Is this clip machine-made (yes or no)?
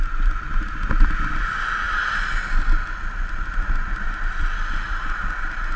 no